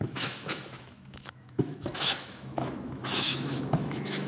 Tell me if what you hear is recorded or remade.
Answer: remade